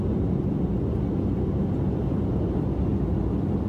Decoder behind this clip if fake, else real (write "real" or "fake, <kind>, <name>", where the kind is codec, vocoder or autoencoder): real